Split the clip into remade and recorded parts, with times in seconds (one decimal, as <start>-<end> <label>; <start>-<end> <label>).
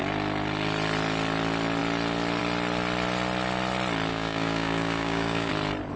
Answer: 0.0-4.1 recorded; 4.1-5.5 remade; 5.5-6.0 recorded